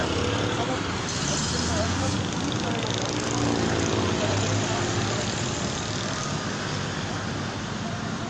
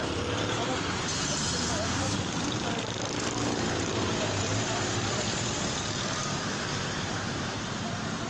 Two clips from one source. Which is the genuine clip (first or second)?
first